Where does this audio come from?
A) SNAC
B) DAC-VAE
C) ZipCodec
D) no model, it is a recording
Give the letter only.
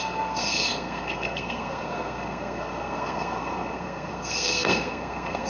A